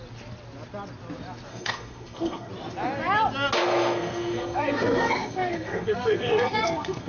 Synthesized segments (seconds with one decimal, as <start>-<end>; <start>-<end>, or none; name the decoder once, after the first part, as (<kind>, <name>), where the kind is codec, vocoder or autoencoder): 1.5-2.5 (codec, SNAC); 3.6-7.1